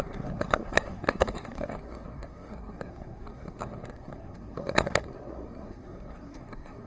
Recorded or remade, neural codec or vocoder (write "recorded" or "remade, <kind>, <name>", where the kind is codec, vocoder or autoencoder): remade, codec, SNAC